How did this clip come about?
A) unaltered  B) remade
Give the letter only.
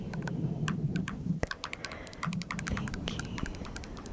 B